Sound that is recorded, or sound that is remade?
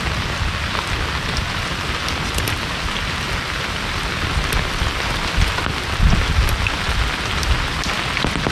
recorded